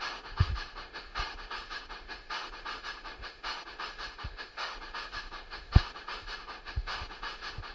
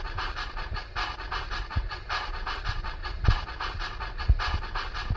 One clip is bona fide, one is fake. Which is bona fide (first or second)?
second